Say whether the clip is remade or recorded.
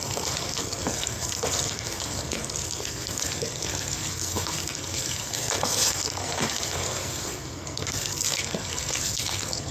remade